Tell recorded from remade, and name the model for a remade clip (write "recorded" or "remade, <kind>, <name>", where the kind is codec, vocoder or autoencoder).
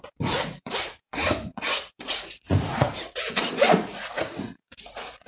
remade, vocoder, Vocos